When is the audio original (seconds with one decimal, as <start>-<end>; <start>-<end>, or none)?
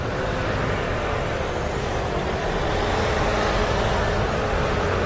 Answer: none